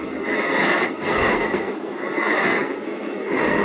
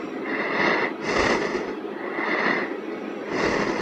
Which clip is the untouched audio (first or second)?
second